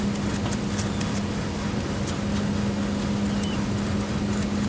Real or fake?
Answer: real